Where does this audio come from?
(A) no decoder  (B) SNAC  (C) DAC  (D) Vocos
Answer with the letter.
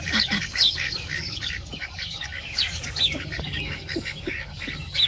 C